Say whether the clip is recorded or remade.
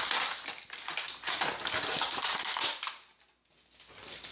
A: recorded